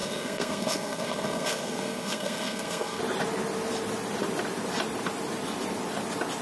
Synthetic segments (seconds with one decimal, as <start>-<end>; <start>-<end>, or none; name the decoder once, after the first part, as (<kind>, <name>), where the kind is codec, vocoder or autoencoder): 0.0-3.0 (codec, SNAC)